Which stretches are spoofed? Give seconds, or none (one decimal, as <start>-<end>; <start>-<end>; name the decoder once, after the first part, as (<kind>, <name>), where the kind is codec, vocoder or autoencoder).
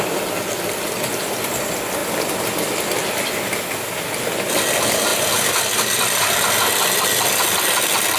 5.1-6.6 (vocoder, BigVGAN v2)